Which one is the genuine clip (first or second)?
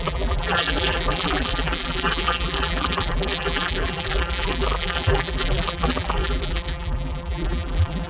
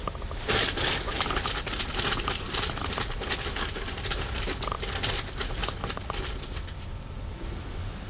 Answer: second